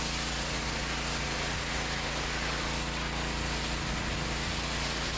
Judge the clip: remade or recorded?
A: recorded